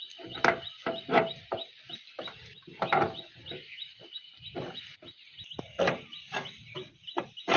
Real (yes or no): yes